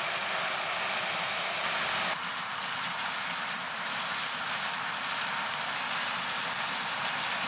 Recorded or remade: recorded